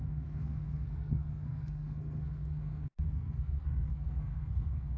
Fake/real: fake